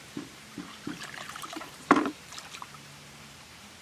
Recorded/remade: remade